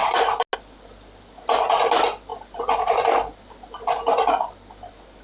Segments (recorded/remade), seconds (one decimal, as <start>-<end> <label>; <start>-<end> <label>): 0.0-5.2 recorded